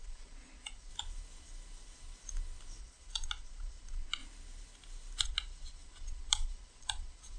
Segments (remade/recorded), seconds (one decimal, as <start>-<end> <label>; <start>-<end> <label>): 0.0-0.9 remade; 0.9-2.8 recorded; 2.8-4.2 remade; 4.2-5.2 recorded; 5.2-7.4 remade